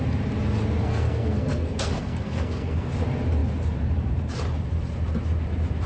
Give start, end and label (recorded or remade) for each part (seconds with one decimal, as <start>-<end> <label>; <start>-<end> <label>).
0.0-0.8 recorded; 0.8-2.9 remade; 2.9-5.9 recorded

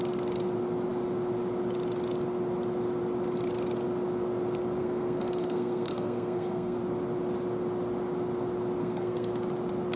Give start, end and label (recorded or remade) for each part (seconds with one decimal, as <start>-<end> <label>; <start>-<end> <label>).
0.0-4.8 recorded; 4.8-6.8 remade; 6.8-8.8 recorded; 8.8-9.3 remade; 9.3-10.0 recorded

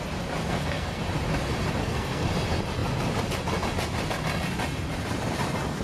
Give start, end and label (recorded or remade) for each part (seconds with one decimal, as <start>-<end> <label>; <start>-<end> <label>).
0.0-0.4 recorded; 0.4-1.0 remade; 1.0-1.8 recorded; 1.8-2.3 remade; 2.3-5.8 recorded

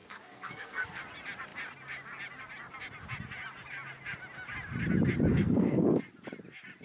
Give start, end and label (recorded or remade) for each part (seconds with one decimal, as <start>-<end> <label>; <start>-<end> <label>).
0.0-1.0 remade; 1.0-5.3 recorded; 5.3-6.0 remade; 6.0-6.8 recorded